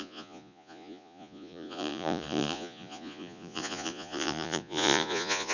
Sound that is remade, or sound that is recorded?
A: remade